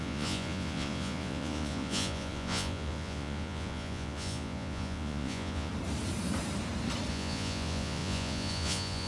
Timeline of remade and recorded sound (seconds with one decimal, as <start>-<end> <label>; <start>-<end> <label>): 0.0-5.7 remade; 5.7-7.1 recorded; 7.1-9.1 remade